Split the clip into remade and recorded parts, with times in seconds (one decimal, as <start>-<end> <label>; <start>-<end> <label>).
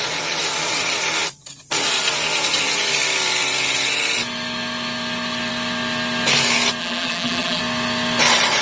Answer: 0.0-6.8 recorded; 6.8-7.6 remade; 7.6-8.6 recorded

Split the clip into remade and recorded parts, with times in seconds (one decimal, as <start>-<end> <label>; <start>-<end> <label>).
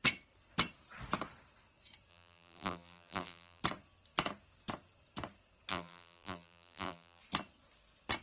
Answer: 0.0-2.1 recorded; 2.1-3.6 remade; 3.6-5.7 recorded; 5.7-7.2 remade; 7.2-8.2 recorded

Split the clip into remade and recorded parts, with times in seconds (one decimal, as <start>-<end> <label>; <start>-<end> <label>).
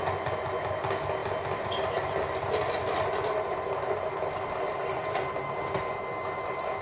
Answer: 0.0-6.8 recorded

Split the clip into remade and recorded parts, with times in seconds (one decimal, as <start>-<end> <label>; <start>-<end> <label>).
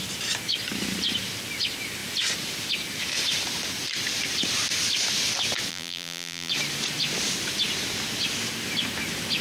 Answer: 0.0-5.7 recorded; 5.7-6.5 remade; 6.5-9.4 recorded